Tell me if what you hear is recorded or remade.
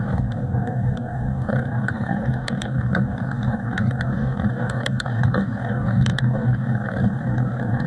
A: remade